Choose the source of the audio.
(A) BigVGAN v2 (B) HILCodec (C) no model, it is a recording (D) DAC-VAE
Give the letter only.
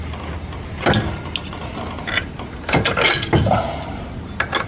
C